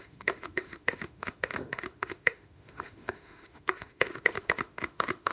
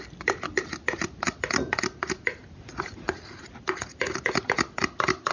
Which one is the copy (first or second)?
first